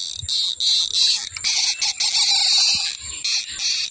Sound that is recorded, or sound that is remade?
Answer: recorded